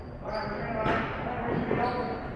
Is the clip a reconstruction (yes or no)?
no